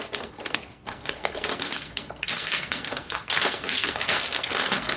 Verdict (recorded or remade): remade